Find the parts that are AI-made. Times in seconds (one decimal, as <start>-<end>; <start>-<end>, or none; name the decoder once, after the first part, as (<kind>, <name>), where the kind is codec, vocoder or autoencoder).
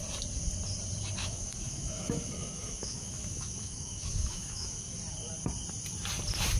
1.2-5.0 (autoencoder, DAC-VAE)